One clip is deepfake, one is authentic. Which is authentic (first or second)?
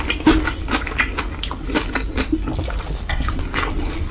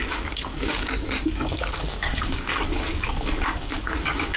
first